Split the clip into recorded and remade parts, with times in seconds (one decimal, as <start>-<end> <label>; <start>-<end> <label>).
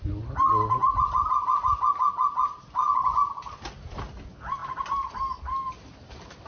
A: 0.0-6.5 recorded